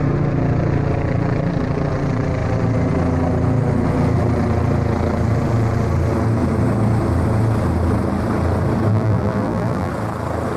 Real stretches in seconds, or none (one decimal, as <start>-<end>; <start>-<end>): 0.0-8.9; 9.9-10.6